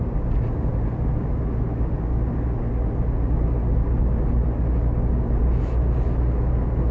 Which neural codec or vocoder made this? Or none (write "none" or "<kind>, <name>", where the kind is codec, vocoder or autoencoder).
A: none